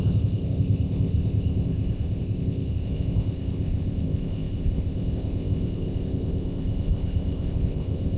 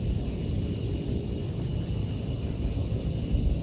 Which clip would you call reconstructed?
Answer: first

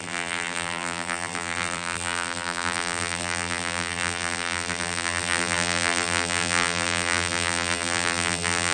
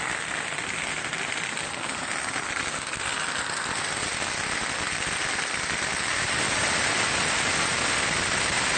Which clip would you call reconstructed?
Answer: first